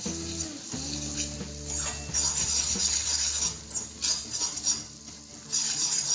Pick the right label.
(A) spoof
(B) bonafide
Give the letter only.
B